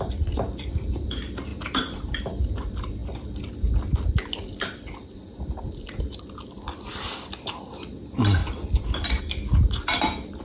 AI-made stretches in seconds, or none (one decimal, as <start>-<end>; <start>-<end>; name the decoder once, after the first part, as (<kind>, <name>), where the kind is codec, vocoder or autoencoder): 1.5-2.2 (vocoder, BigVGAN v2); 8.4-9.2